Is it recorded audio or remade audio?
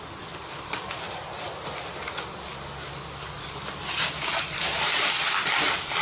recorded